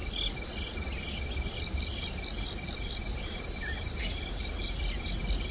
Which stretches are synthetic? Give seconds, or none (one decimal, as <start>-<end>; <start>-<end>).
none